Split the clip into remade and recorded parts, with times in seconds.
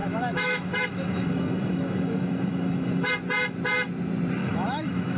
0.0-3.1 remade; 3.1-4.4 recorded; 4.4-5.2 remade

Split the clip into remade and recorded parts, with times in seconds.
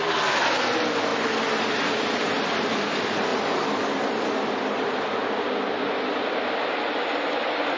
0.0-7.8 recorded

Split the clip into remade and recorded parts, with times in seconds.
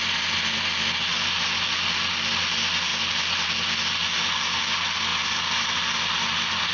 0.0-6.7 recorded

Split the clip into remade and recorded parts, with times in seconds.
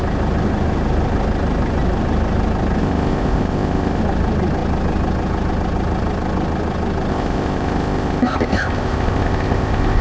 0.0-2.8 recorded; 2.8-4.0 remade; 4.0-7.1 recorded; 7.1-10.0 remade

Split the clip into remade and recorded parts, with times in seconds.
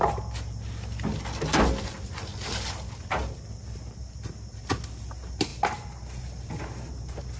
0.0-7.4 recorded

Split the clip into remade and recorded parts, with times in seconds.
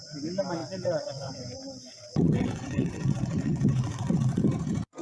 0.0-0.6 recorded; 0.6-1.3 remade; 1.3-1.9 recorded; 1.9-4.5 remade; 4.5-5.0 recorded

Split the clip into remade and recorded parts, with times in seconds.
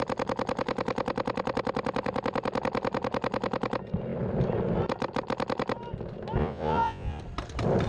0.0-6.4 recorded; 6.4-7.2 remade; 7.2-7.9 recorded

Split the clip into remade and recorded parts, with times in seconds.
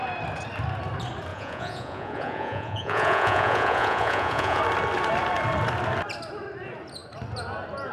0.0-1.3 recorded; 1.3-4.6 remade; 4.6-7.9 recorded